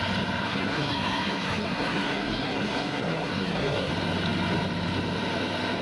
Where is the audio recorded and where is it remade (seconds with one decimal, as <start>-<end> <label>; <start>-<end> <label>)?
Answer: 0.0-0.4 recorded; 0.4-3.9 remade; 3.9-5.8 recorded